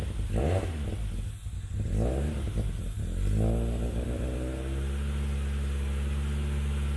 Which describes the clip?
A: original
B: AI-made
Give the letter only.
A